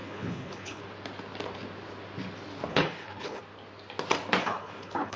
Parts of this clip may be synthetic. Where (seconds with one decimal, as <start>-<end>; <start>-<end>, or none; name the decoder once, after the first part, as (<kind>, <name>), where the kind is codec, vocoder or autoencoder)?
0.0-0.8 (codec, HILCodec); 2.7-3.4; 4.4-5.2